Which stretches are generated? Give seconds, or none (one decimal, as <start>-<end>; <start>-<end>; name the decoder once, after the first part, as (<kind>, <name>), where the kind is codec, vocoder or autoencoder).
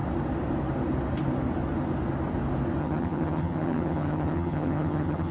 2.8-5.3 (vocoder, HiFi-GAN)